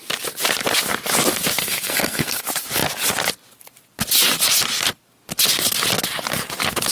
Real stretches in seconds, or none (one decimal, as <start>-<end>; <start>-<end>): 0.0-1.6; 2.4-6.9